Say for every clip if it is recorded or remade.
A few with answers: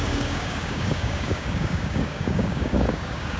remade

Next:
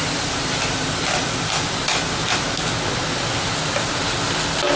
recorded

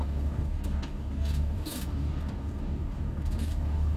remade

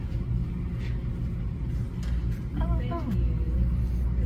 recorded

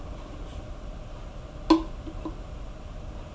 recorded